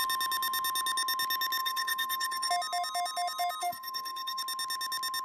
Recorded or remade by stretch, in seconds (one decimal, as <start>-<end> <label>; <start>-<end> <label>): 0.0-1.6 recorded; 1.6-2.5 remade; 2.5-3.6 recorded; 3.6-4.4 remade; 4.4-5.2 recorded